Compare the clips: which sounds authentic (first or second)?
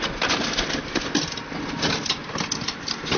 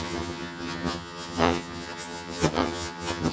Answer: first